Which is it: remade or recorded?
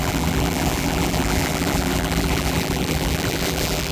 remade